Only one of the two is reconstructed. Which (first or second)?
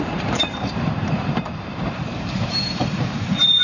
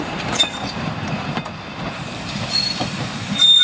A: first